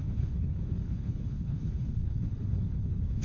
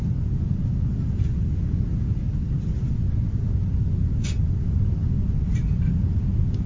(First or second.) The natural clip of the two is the second